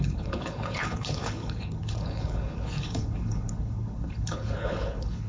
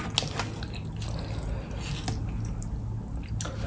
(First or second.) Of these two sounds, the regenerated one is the first